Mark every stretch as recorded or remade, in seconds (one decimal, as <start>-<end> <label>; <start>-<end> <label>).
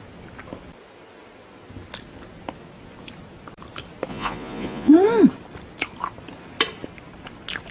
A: 0.0-4.1 recorded; 4.1-4.9 remade; 4.9-7.7 recorded